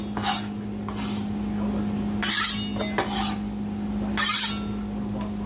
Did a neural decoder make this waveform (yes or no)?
no